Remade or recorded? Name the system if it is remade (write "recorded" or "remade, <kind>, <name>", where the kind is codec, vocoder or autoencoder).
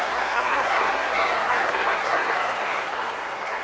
remade, codec, SNAC